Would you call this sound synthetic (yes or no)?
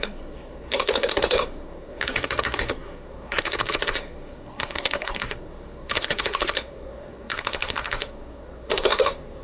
yes